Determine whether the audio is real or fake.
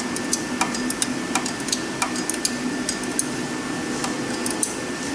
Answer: real